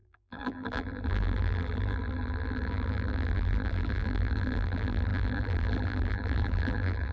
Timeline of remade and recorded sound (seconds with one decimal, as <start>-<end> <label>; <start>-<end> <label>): 0.0-7.1 remade